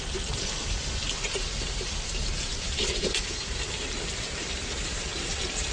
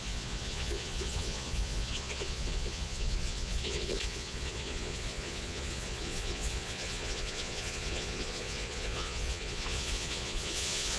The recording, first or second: first